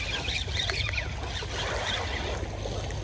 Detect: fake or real real